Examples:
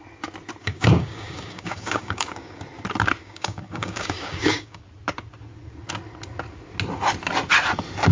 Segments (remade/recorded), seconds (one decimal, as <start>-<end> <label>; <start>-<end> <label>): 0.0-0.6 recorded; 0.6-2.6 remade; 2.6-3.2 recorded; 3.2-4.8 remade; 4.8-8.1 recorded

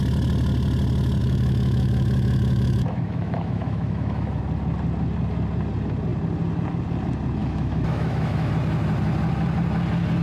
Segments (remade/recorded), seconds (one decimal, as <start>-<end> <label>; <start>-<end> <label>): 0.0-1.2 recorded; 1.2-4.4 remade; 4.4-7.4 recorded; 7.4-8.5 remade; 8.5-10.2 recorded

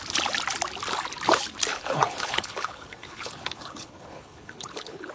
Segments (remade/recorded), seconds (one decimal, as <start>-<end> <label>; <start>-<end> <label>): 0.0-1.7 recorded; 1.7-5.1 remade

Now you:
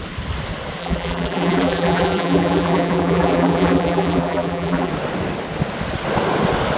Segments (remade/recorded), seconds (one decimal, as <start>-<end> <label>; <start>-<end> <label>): 0.0-0.8 recorded; 0.8-4.9 remade; 4.9-6.8 recorded